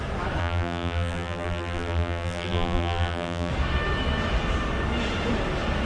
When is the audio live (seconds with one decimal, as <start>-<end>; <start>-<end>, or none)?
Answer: 0.0-0.4; 3.5-5.9